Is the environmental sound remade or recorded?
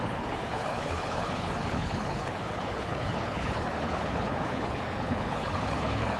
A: remade